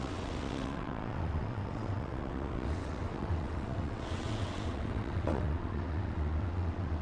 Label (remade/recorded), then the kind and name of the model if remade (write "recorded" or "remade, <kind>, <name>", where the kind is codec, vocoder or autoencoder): remade, vocoder, WaveNeXt